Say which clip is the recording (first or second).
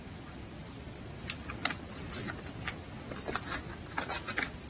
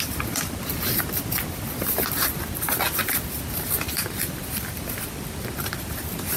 first